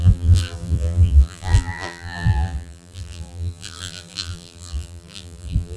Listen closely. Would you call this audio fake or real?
fake